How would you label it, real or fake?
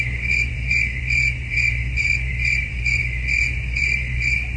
fake